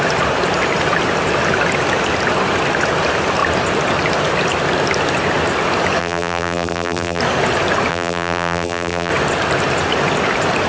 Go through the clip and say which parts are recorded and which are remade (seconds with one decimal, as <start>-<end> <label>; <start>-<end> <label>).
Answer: 0.0-6.0 recorded; 6.0-7.2 remade; 7.2-7.9 recorded; 7.9-9.1 remade; 9.1-10.7 recorded